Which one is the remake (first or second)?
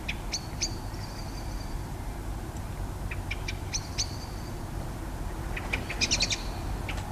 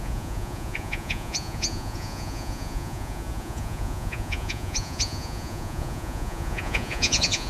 second